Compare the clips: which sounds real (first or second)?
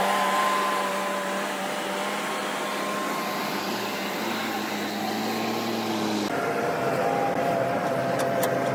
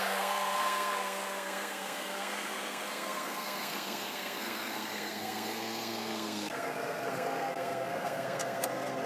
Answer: first